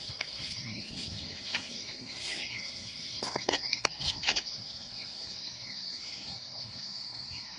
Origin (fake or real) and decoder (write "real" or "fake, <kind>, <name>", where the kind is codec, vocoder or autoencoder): fake, codec, SNAC